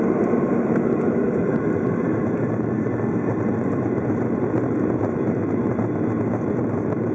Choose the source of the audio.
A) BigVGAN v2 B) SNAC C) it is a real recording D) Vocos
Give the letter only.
A